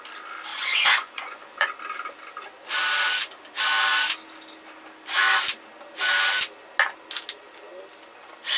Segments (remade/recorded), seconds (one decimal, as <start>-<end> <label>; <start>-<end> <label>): 0.0-0.5 recorded; 0.5-1.7 remade; 1.7-8.6 recorded